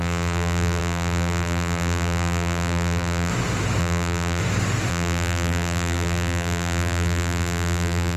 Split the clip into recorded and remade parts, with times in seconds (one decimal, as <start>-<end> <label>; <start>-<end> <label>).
0.0-3.3 remade; 3.3-3.8 recorded; 3.8-4.4 remade; 4.4-4.9 recorded; 4.9-8.2 remade